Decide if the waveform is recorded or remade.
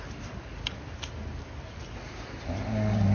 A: recorded